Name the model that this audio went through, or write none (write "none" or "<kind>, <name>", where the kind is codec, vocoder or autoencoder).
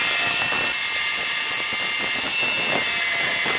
none